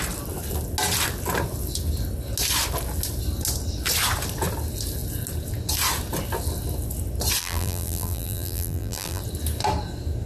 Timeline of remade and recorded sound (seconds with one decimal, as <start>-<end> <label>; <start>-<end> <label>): 0.0-7.4 recorded; 7.4-9.2 remade; 9.2-10.3 recorded

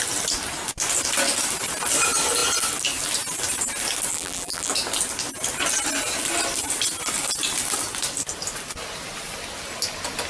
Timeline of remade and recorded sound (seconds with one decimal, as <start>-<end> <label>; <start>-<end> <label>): 0.0-4.1 recorded; 4.1-4.7 remade; 4.7-10.3 recorded